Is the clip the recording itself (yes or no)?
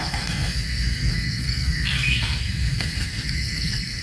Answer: no